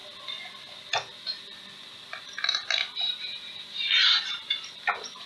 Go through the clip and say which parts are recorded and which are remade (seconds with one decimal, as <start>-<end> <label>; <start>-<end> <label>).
0.0-2.2 recorded; 2.2-5.3 remade